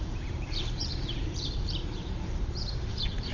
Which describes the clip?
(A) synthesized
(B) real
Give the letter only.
A